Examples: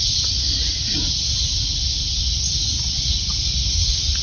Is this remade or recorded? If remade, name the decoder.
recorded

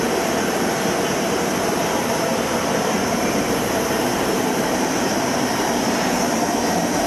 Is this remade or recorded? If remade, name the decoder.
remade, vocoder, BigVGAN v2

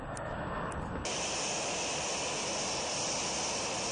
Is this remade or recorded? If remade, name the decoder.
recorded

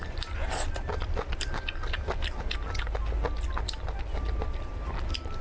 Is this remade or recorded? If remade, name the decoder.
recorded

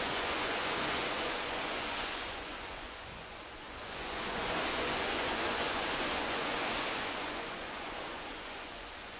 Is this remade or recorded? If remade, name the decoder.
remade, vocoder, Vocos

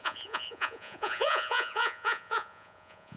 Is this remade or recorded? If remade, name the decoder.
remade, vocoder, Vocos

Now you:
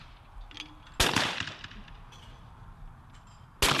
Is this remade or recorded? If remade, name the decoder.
recorded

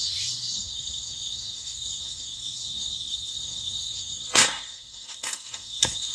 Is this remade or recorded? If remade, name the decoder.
remade, codec, SNAC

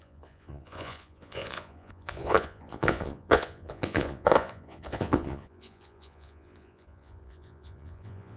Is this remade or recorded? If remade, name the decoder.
remade, vocoder, Vocos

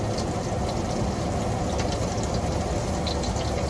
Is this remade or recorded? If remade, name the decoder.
recorded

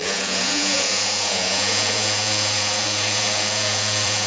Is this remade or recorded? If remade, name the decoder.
remade, vocoder, Vocos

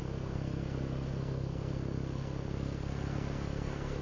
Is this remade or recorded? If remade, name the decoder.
remade, codec, SNAC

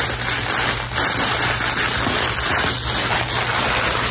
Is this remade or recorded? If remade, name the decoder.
recorded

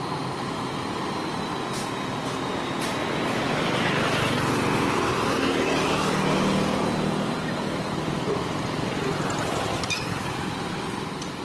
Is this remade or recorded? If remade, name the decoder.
recorded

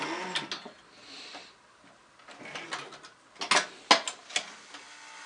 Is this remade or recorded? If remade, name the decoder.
recorded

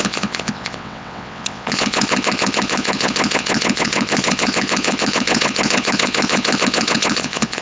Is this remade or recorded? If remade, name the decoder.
remade, vocoder, WaveNeXt